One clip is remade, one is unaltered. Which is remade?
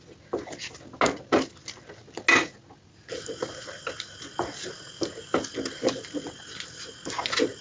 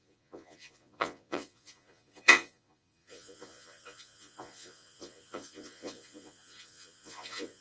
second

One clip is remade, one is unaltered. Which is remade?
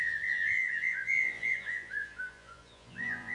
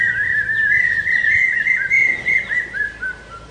first